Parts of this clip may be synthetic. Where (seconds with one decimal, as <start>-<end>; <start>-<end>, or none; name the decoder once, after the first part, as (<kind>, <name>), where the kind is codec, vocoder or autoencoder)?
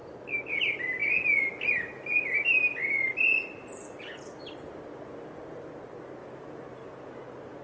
0.0-0.6 (vocoder, BigVGAN v2); 3.6-4.2; 6.2-6.9